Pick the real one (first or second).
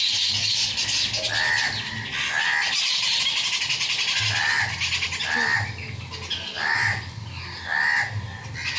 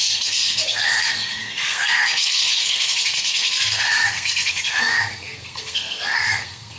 first